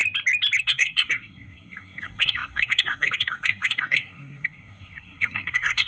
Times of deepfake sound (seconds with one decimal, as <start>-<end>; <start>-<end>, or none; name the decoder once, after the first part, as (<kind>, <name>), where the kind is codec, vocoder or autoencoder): 0.6-5.9 (codec, SNAC)